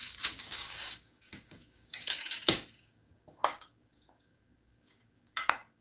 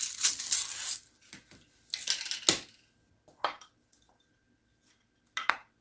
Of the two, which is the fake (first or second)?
first